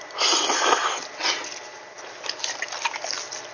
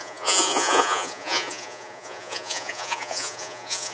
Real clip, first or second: first